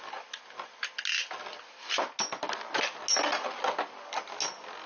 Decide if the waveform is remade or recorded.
recorded